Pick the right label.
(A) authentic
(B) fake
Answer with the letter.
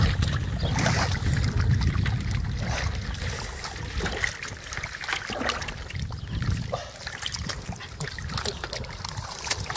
A